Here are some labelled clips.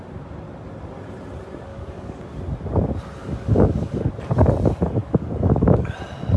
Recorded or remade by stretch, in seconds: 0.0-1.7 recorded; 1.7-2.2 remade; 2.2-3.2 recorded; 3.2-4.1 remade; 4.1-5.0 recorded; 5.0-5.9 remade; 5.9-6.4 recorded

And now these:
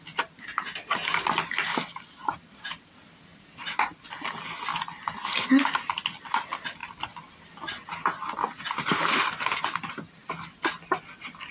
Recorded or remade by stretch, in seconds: 0.0-3.3 recorded; 3.3-4.1 remade; 4.1-6.8 recorded; 6.8-7.9 remade; 7.9-11.5 recorded